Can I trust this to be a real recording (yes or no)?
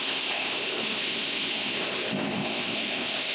no